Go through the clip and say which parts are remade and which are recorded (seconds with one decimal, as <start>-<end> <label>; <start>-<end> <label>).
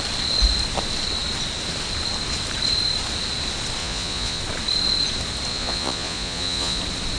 0.0-3.8 recorded; 3.8-4.4 remade; 4.4-5.5 recorded; 5.5-6.8 remade; 6.8-7.2 recorded